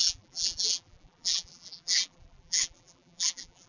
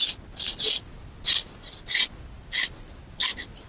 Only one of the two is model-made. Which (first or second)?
first